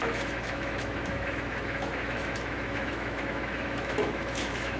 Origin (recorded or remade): remade